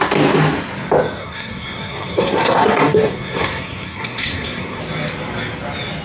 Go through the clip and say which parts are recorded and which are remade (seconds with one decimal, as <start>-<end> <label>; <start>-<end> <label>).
0.0-1.2 recorded; 1.2-4.8 remade; 4.8-6.0 recorded